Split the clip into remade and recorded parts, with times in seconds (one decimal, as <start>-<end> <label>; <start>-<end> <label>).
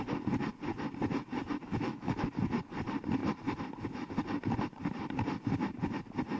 0.0-1.6 recorded; 1.6-2.3 remade; 2.3-6.4 recorded